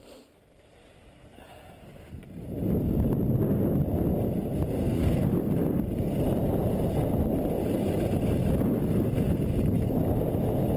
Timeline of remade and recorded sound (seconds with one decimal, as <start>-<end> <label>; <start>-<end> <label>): 0.0-4.8 recorded; 4.8-5.3 remade; 5.3-10.8 recorded